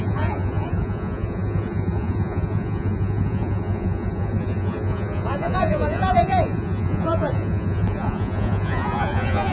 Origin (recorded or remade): remade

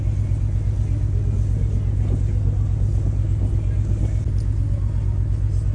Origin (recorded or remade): recorded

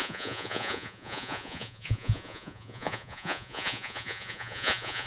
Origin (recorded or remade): remade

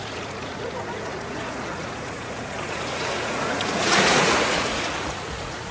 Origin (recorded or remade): remade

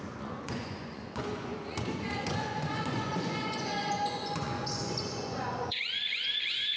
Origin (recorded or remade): remade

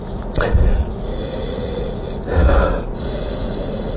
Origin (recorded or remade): remade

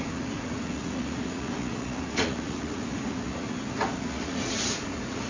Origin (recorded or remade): remade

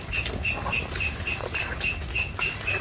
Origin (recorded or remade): recorded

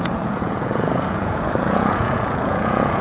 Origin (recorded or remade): remade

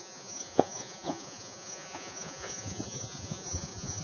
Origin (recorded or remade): remade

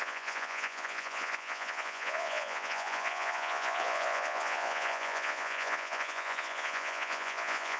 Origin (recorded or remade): remade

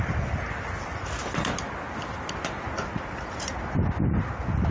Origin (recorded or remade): recorded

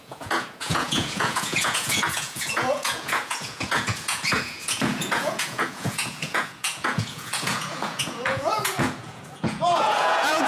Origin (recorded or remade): remade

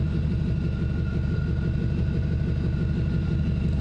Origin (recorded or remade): recorded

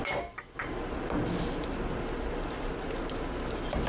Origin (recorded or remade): recorded